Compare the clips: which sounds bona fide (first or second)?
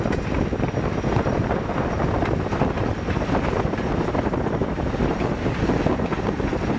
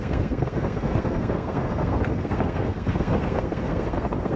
first